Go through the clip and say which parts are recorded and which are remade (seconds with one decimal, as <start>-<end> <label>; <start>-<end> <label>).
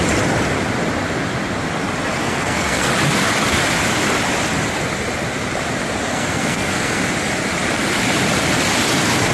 0.0-2.2 recorded; 2.2-2.9 remade; 2.9-6.1 recorded; 6.1-7.0 remade; 7.0-9.3 recorded